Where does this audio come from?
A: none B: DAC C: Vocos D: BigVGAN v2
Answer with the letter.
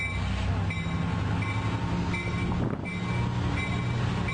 A